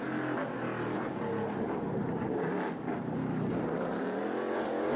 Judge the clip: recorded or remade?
recorded